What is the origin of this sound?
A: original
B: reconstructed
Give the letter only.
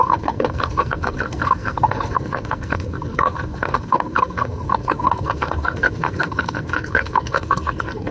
B